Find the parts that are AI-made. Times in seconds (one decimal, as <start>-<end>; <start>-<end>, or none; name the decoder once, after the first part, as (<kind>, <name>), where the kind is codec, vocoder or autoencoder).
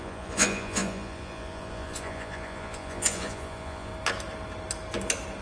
0.0-3.9 (vocoder, Vocos)